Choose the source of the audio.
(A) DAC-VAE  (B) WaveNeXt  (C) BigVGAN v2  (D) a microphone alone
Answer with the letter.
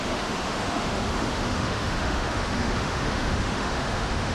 A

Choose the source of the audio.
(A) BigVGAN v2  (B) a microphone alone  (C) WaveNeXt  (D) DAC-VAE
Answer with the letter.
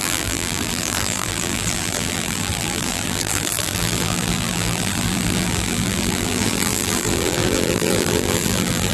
A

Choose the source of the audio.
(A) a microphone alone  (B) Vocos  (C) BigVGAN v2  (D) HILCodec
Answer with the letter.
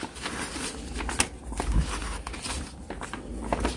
A